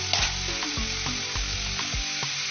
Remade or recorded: recorded